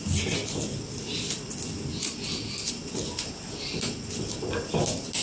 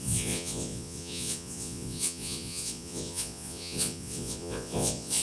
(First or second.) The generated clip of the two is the second